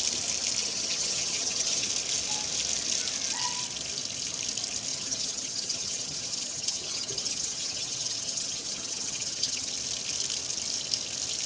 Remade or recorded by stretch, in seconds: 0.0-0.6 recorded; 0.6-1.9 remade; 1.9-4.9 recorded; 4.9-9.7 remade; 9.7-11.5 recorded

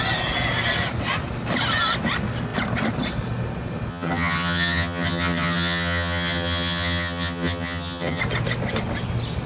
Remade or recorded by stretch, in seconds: 0.0-3.9 recorded; 3.9-8.2 remade; 8.2-9.5 recorded

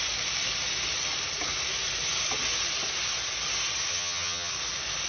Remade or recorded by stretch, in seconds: 0.0-3.9 recorded; 3.9-4.5 remade; 4.5-5.1 recorded

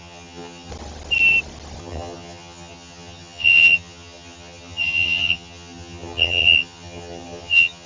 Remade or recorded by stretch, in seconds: 0.0-0.7 remade; 0.7-1.8 recorded; 1.8-7.9 remade

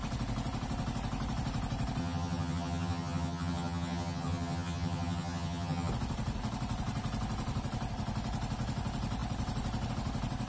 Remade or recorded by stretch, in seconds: 0.0-2.0 recorded; 2.0-5.9 remade; 5.9-10.5 recorded